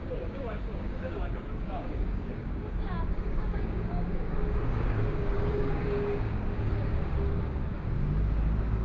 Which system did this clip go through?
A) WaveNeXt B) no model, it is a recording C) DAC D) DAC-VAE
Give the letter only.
C